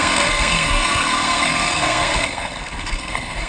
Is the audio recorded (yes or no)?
no